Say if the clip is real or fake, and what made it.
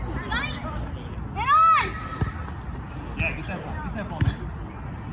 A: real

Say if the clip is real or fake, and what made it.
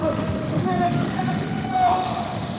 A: fake, autoencoder, DAC-VAE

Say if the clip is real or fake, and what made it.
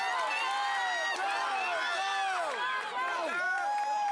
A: real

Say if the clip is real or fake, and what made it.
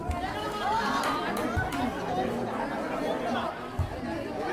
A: real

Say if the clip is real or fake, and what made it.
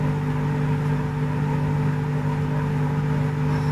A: real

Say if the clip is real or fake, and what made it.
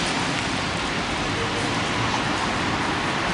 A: real